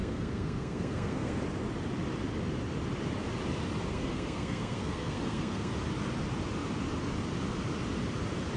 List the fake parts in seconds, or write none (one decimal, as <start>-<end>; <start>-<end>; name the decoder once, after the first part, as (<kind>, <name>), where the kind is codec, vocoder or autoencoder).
0.0-1.4 (codec, SNAC); 3.9-5.7